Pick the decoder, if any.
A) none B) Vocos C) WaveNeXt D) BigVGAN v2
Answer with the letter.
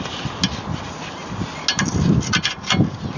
A